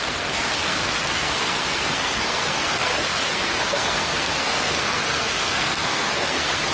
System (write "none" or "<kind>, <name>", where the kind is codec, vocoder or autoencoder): codec, SNAC